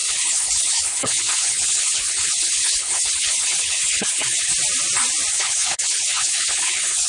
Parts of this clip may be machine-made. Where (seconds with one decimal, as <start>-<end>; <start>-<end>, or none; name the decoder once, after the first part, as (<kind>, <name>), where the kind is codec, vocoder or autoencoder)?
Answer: 0.0-4.5 (codec, HILCodec); 5.3-7.1